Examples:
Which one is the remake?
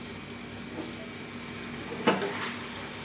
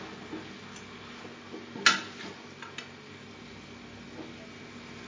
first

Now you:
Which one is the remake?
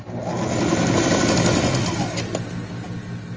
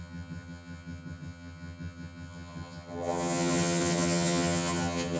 second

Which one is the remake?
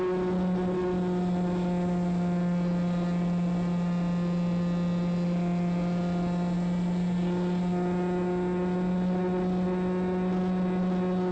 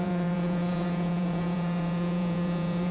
second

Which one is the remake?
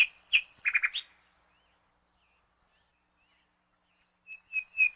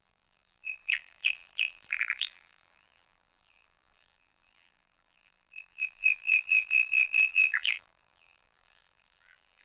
second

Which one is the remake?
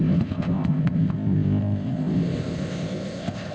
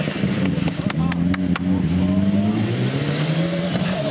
first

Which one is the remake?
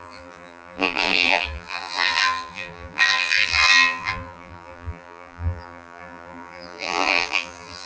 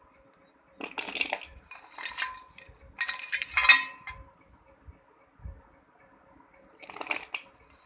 first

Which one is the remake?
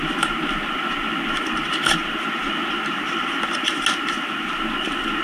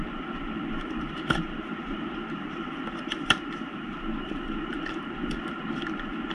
second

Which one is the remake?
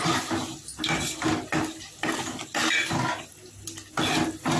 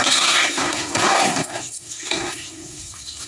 second